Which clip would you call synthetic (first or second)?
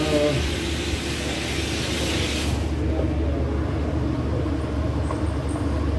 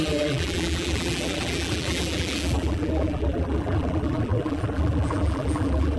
second